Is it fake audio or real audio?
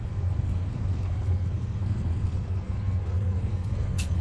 fake